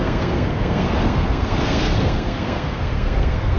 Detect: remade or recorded remade